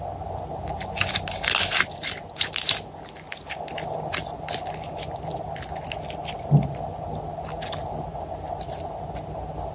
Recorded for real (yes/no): yes